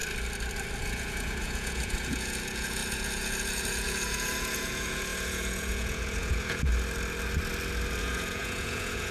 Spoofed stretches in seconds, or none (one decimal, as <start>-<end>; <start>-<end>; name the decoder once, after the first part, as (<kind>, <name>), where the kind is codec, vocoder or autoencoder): 0.8-6.7 (vocoder, Vocos); 8.0-9.1